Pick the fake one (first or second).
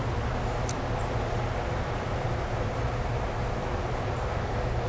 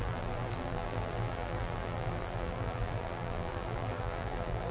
second